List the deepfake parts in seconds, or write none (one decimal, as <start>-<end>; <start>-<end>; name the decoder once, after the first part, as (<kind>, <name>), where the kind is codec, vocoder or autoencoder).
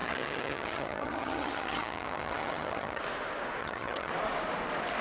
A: 0.0-3.0 (vocoder, HiFi-GAN); 3.6-4.1